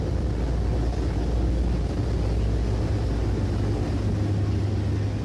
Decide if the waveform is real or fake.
real